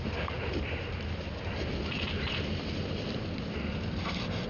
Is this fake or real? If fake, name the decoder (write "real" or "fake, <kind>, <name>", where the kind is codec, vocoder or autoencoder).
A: fake, vocoder, BigVGAN v2